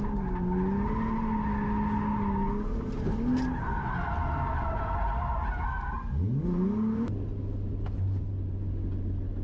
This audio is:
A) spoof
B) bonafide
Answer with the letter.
B